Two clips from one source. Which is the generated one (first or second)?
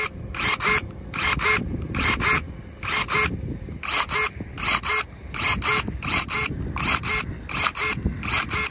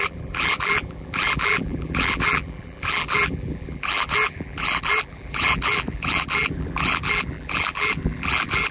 second